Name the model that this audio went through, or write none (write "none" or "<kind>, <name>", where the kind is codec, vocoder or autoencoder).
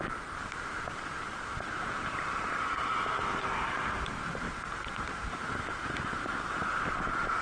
vocoder, BigVGAN v2